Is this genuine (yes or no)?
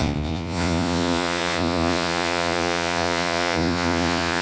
no